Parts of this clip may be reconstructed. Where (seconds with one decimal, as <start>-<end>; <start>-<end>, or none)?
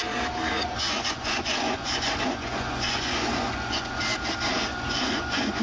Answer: 0.6-4.0; 4.7-5.6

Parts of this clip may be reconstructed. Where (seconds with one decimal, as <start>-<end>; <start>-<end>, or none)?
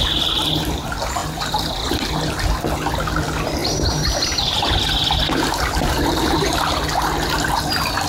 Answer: 3.6-4.8; 5.5-6.6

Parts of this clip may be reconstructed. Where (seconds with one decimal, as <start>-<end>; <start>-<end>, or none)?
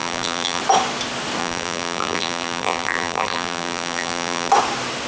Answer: 0.0-0.6; 1.4-4.5